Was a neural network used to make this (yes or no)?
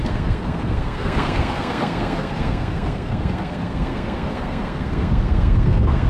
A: yes